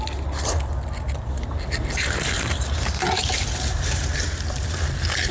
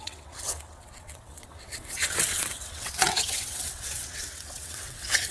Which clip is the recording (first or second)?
first